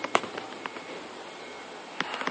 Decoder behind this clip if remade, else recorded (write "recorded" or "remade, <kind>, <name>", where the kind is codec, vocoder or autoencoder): recorded